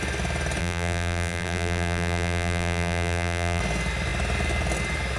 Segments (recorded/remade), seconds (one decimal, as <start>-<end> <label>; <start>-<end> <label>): 0.0-0.6 recorded; 0.6-3.6 remade; 3.6-5.2 recorded